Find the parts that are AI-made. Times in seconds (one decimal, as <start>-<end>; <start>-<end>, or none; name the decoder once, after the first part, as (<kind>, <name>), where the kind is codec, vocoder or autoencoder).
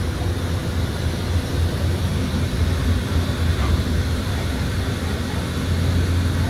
3.5-4.8 (vocoder, BigVGAN v2)